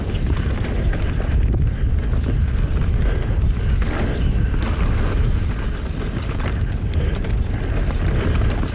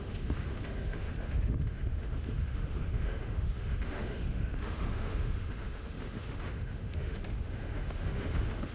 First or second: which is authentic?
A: first